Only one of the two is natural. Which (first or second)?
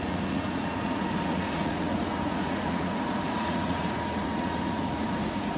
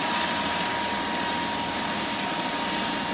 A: second